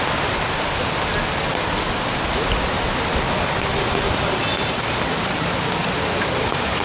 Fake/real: real